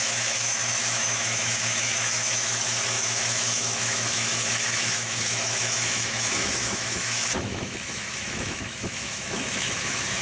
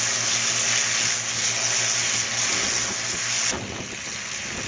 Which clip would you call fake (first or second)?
first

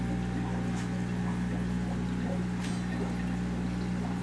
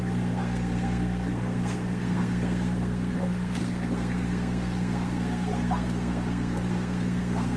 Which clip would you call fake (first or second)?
second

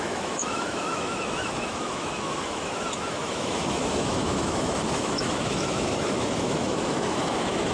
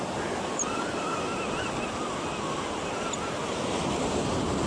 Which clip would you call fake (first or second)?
first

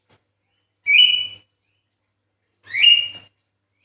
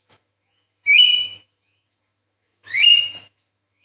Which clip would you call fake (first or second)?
second